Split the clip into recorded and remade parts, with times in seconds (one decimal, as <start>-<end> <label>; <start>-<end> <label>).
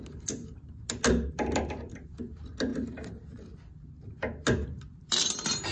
0.0-5.7 recorded